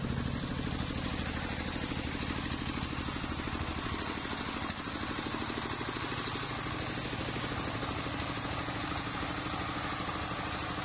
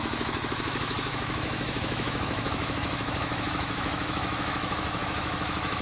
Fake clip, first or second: second